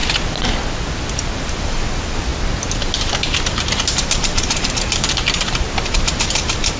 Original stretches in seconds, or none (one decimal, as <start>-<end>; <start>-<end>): 0.0-1.4; 2.3-3.1